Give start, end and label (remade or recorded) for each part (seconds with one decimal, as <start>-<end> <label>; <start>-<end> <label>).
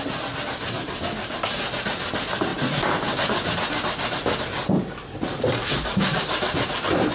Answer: 0.0-7.1 recorded